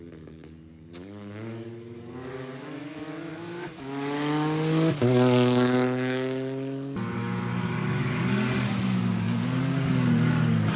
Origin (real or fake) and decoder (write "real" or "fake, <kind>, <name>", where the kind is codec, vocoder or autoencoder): fake, codec, DAC